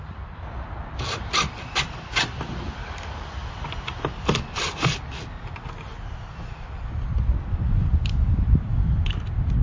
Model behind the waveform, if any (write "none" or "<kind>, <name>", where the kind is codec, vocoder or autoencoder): vocoder, BigVGAN v2